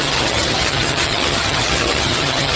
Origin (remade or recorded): remade